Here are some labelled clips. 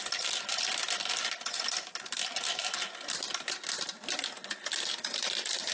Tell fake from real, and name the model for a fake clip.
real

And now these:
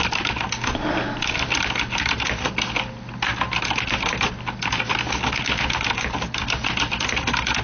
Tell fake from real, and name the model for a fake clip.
real